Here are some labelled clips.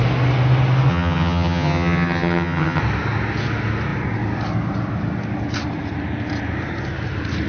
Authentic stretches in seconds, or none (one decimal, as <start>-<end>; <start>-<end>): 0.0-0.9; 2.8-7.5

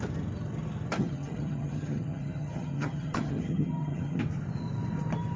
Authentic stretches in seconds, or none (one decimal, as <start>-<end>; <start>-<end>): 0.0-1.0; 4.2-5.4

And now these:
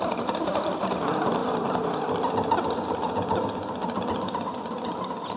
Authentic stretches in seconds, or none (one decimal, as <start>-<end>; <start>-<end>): 0.0-5.4

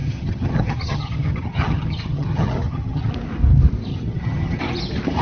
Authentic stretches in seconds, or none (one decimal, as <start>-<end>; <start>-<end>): 3.1-3.9; 4.6-5.2